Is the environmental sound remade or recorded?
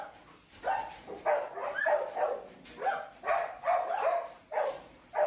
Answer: recorded